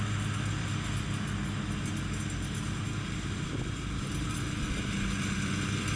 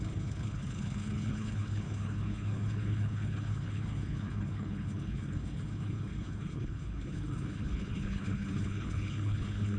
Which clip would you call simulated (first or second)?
second